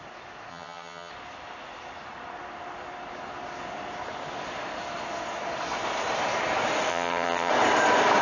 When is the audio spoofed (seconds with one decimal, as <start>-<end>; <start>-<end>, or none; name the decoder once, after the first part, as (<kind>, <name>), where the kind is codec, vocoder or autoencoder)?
0.5-1.1 (vocoder, HiFi-GAN); 6.9-7.5

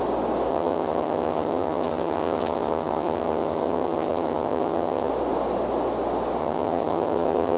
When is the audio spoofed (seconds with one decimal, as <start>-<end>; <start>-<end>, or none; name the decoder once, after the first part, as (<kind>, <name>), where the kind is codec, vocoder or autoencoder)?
0.5-5.1 (vocoder, HiFi-GAN); 6.4-7.6